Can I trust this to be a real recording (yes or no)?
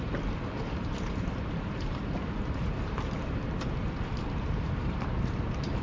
no